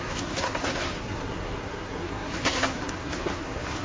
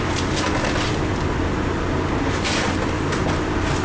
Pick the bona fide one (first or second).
second